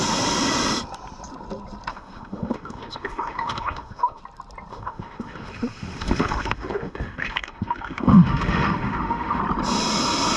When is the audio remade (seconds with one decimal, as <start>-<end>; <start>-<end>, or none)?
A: 1.9-4.2; 4.7-9.4